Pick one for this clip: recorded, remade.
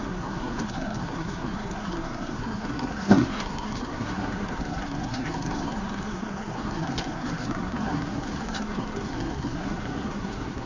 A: remade